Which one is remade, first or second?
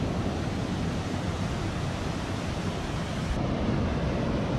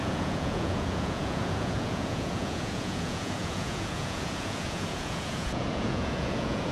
second